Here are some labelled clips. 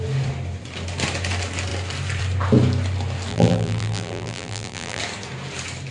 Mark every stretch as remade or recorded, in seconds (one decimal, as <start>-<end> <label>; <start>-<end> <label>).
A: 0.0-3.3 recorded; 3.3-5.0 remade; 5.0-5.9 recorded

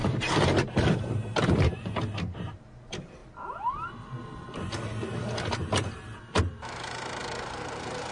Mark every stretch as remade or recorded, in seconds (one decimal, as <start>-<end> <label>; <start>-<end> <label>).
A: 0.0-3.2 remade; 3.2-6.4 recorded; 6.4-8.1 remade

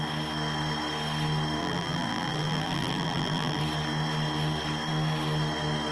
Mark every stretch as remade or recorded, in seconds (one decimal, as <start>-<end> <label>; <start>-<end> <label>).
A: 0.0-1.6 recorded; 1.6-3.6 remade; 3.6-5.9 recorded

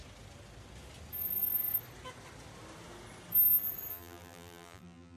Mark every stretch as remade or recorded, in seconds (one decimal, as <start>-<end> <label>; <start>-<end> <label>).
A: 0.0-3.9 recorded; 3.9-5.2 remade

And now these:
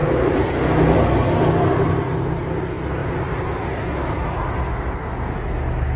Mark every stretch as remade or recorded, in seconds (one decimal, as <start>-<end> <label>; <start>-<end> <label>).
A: 0.0-1.0 remade; 1.0-3.0 recorded; 3.0-4.1 remade; 4.1-6.0 recorded

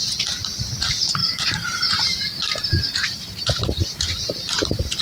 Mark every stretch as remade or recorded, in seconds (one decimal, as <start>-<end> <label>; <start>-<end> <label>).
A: 0.0-1.2 recorded; 1.2-4.2 remade; 4.2-5.0 recorded